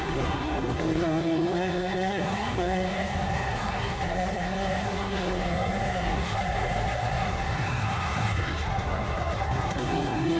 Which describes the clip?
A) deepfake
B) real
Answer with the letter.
A